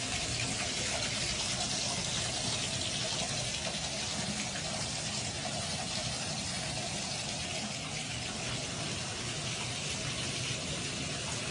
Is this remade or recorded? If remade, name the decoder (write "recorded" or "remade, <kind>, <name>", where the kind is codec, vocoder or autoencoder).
recorded